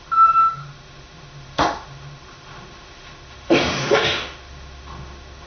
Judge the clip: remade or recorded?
remade